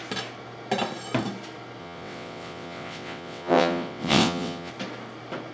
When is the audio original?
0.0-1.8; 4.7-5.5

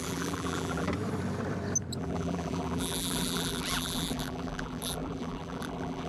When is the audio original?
0.9-2.0

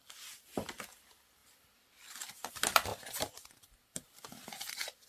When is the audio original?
0.0-2.9; 3.7-5.1

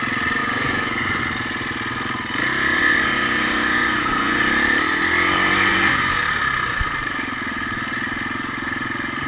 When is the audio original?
0.0-0.4; 1.2-2.7; 4.4-5.7; 6.2-9.3

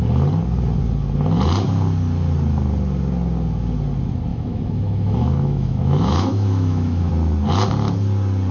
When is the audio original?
0.0-4.3; 7.1-8.5